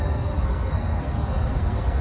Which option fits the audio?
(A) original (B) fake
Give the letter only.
B